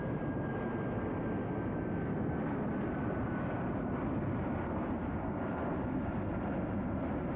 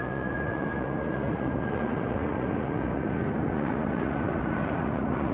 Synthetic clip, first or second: second